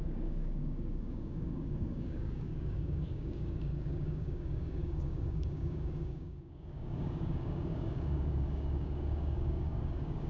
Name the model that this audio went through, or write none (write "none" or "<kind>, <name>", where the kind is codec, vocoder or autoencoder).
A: codec, DAC